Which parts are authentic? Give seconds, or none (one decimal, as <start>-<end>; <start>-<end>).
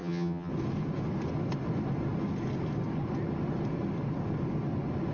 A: 0.5-5.1